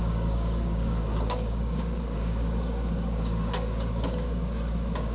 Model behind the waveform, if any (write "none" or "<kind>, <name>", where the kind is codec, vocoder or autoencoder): codec, DAC